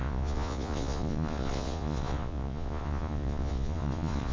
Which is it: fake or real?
fake